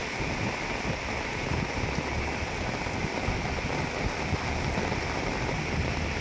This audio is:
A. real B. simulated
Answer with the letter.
A